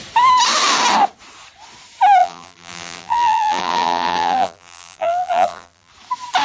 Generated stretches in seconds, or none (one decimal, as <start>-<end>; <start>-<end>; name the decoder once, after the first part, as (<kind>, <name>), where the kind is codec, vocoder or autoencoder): 2.2-5.9 (vocoder, BigVGAN v2)